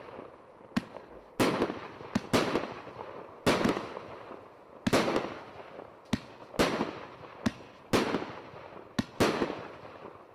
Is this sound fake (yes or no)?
no